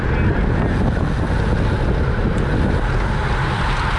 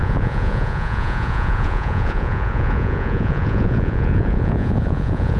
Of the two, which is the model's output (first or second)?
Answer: second